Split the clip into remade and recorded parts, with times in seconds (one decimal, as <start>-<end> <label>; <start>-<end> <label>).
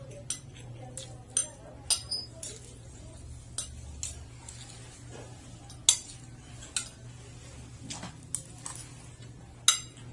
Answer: 0.0-2.0 recorded; 2.0-3.2 remade; 3.2-10.1 recorded